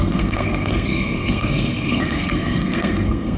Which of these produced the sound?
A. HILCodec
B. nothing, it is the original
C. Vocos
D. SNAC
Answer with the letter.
D